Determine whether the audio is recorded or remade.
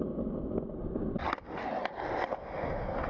recorded